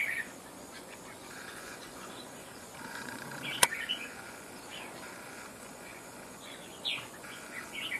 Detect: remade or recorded remade